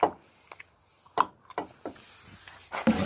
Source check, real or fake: real